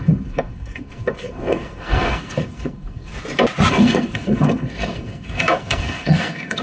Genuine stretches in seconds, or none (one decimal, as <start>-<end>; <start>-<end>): 3.1-3.7